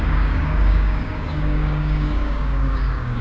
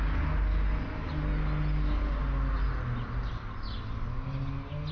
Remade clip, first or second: first